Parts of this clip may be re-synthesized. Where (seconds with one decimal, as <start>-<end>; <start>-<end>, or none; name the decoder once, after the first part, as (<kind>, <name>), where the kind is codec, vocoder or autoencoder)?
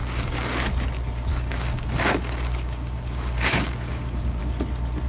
0.0-0.6 (codec, DAC); 1.3-4.4